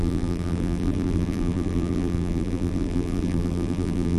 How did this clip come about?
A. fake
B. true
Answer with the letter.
A